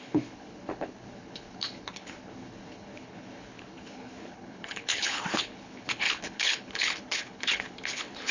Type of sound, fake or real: fake